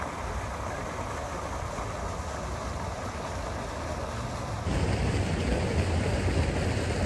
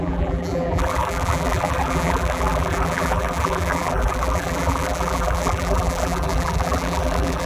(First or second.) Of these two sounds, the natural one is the first